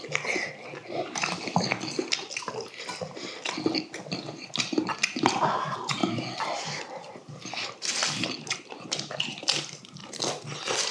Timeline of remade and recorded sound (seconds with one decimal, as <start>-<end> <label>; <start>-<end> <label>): 0.0-0.8 recorded; 0.8-4.0 remade; 4.0-6.0 recorded; 6.0-6.8 remade; 6.8-10.9 recorded